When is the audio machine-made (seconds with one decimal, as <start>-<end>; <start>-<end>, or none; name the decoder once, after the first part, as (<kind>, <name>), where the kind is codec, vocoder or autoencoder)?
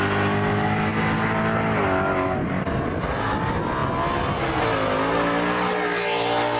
none